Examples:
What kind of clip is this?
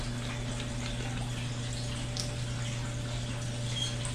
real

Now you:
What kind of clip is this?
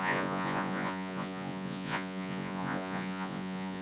fake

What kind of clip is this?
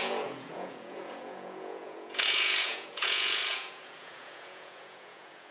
fake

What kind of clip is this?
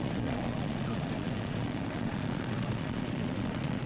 fake